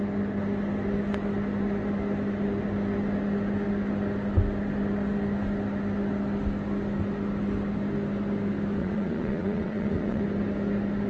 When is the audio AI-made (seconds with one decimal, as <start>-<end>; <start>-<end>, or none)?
8.8-10.2